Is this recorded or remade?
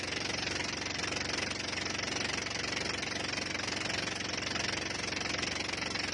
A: recorded